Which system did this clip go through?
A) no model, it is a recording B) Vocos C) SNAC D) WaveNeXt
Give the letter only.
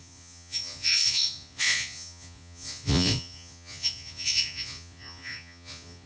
B